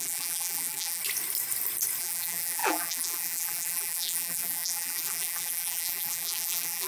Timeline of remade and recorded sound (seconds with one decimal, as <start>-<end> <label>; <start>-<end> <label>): 0.0-1.0 remade; 1.0-2.0 recorded; 2.0-6.9 remade